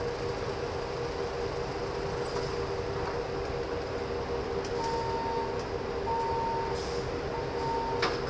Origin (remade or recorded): recorded